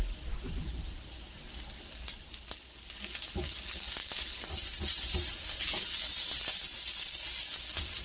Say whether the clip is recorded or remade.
recorded